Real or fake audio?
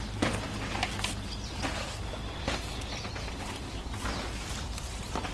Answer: real